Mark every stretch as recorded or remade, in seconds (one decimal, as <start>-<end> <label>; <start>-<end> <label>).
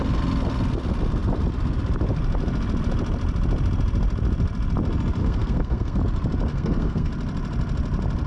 0.0-5.2 recorded; 5.2-6.0 remade; 6.0-6.5 recorded; 6.5-7.1 remade; 7.1-8.3 recorded